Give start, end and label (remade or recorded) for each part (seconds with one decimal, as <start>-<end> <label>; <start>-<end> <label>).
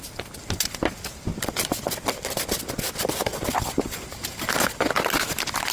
0.0-3.3 recorded; 3.3-4.9 remade; 4.9-5.7 recorded